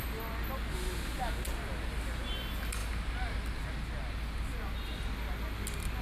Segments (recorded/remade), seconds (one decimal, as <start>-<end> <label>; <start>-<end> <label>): 0.0-6.0 recorded